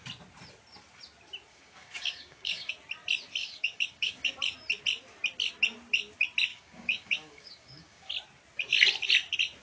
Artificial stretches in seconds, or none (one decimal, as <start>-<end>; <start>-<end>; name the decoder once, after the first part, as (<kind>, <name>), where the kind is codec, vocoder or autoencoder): 1.5-2.7 (codec, DAC); 3.4-4.3; 6.5-8.1